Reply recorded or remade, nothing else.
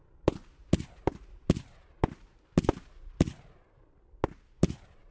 recorded